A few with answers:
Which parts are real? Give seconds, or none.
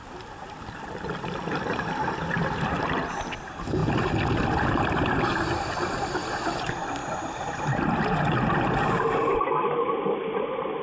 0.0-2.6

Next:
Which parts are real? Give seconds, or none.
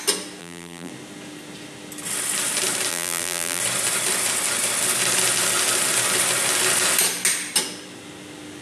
0.0-0.4; 0.9-2.9; 3.6-8.6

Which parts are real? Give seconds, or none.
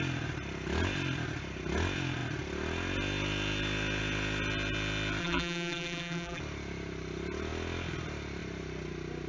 0.0-5.2; 6.4-9.3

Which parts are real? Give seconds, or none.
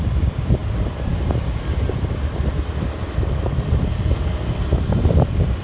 none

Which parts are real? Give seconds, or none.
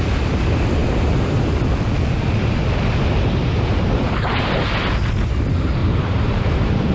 0.0-0.8; 1.5-3.4; 4.7-5.8; 6.4-6.9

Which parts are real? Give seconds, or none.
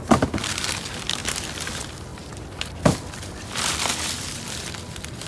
1.2-1.7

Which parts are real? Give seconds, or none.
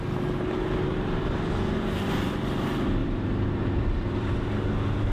0.0-3.0; 4.3-5.1